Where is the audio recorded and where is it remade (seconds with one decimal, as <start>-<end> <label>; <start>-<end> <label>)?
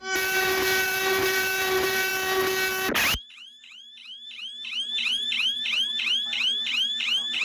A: 0.0-2.1 remade; 2.1-3.3 recorded; 3.3-7.4 remade